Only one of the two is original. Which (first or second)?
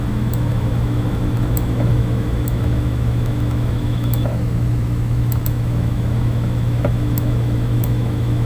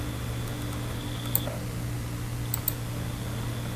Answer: second